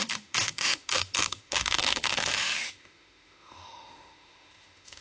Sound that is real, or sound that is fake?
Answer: fake